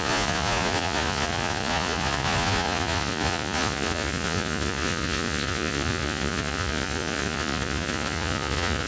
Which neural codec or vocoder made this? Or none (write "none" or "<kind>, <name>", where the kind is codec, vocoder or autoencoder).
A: vocoder, Vocos